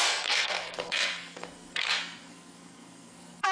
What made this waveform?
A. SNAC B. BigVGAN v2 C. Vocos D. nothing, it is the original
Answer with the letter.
A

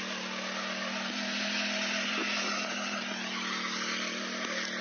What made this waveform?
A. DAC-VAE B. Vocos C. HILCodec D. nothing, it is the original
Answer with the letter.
D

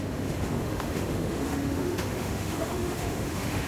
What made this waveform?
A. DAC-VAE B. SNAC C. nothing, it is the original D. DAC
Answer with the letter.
A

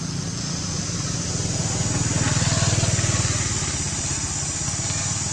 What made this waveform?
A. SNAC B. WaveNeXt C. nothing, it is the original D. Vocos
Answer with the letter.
C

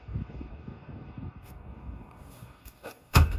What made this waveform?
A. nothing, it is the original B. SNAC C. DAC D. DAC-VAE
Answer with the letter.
C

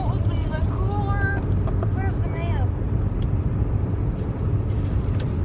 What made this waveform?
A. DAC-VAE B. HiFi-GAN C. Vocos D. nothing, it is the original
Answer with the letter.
D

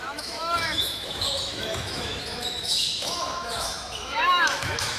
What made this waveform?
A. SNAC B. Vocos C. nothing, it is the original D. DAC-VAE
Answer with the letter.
D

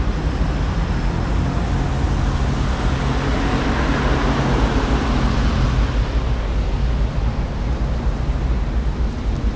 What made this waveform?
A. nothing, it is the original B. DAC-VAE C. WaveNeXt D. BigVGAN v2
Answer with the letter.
A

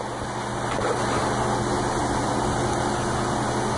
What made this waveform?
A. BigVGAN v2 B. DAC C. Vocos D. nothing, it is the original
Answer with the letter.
D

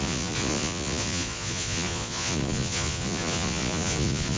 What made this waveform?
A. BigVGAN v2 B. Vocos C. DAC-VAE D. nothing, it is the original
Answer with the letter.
B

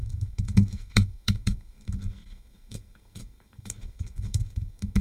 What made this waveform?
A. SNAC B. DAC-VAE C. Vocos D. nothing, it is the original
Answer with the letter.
A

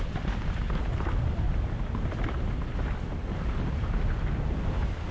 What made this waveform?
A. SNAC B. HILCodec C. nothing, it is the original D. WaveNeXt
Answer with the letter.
C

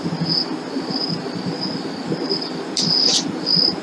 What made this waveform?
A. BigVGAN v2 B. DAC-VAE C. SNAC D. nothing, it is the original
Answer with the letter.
D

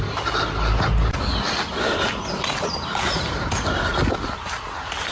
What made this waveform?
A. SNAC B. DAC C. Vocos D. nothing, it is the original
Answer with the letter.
D